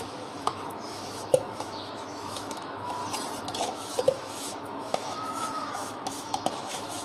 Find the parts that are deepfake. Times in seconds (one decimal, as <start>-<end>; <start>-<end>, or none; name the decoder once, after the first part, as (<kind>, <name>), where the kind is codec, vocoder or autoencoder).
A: 0.0-3.0 (autoencoder, DAC-VAE); 3.6-7.0